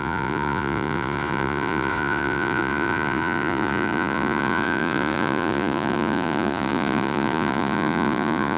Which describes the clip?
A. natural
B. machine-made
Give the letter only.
B